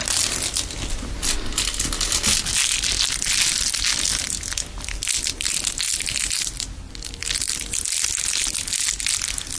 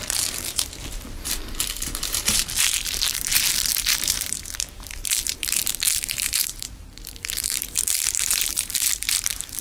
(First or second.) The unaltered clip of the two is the first